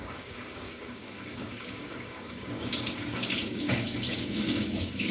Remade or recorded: remade